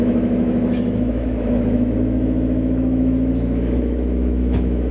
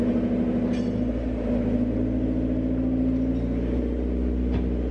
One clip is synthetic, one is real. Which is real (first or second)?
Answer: second